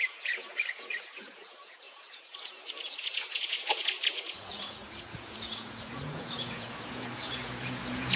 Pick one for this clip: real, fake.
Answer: fake